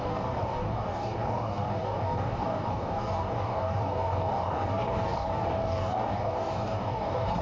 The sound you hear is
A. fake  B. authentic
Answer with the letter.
A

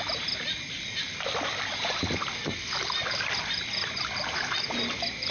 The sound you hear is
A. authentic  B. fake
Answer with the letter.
A